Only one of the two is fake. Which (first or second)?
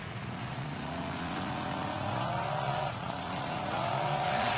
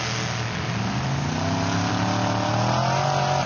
first